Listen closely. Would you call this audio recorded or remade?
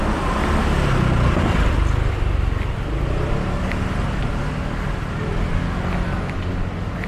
recorded